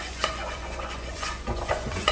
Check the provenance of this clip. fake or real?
fake